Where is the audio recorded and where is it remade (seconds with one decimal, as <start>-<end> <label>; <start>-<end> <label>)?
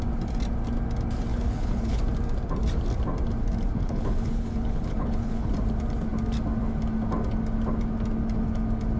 0.0-1.3 recorded; 1.3-2.0 remade; 2.0-3.8 recorded; 3.8-5.5 remade; 5.5-9.0 recorded